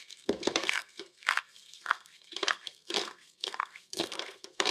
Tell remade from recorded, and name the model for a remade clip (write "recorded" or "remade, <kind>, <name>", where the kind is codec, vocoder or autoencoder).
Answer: remade, codec, SNAC